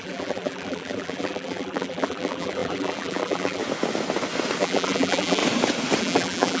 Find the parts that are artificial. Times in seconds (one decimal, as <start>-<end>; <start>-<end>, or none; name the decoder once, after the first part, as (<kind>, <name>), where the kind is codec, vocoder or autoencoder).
0.0-3.6 (vocoder, BigVGAN v2); 4.6-5.4; 6.0-6.6